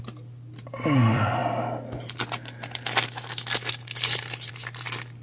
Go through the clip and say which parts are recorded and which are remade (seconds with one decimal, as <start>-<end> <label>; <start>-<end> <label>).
0.0-1.4 remade; 1.4-4.5 recorded; 4.5-5.2 remade